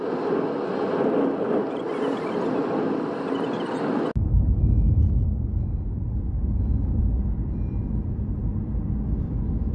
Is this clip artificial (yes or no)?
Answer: no